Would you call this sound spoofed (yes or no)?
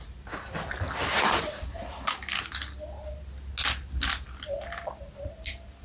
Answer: no